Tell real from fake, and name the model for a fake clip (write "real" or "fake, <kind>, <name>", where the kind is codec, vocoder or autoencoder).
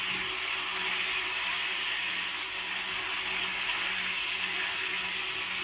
real